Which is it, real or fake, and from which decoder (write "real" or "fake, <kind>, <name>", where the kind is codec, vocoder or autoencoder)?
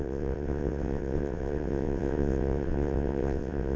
fake, vocoder, WaveNeXt